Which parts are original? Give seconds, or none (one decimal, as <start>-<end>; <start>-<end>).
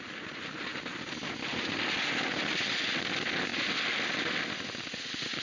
0.0-0.7; 2.3-3.5; 5.0-5.4